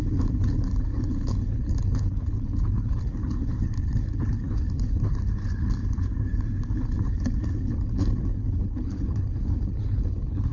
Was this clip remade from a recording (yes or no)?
yes